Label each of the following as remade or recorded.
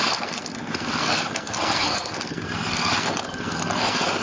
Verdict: remade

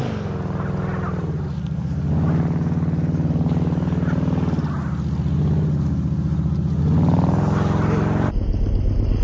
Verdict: recorded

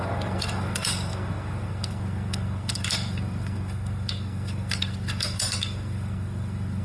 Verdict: remade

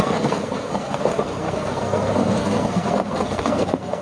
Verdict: remade